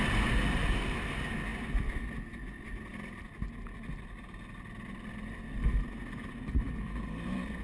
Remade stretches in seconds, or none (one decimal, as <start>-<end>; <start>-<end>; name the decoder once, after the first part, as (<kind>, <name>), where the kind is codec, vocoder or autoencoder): none